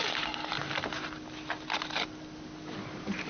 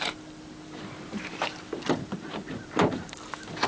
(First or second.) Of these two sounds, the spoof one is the second